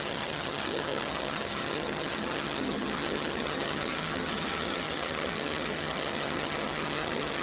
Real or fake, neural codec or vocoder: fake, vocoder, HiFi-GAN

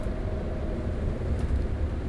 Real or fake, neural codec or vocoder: real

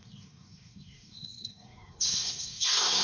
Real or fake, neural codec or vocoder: fake, codec, SNAC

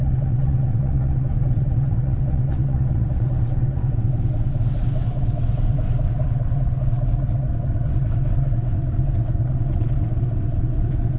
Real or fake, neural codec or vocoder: fake, vocoder, WaveNeXt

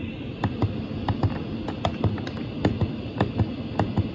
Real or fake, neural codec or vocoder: real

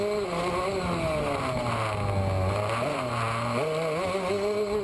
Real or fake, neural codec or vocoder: real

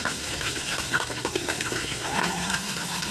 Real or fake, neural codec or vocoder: fake, codec, SNAC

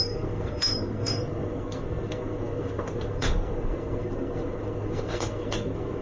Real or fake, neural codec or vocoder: fake, codec, SNAC